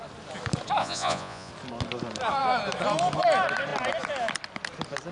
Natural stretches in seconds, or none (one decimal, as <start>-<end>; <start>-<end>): 0.0-0.8; 1.5-5.1